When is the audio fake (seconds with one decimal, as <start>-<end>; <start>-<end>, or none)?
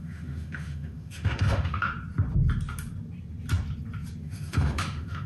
0.0-1.9; 4.2-5.3